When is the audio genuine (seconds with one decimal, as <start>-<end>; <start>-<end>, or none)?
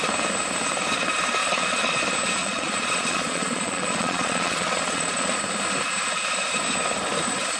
0.0-1.4; 2.0-2.4; 5.4-7.6